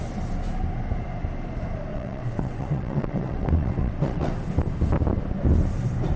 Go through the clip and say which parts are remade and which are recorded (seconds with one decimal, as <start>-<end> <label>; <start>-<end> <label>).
0.0-1.9 recorded; 1.9-4.3 remade; 4.3-6.2 recorded